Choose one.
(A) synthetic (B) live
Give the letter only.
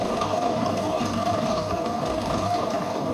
A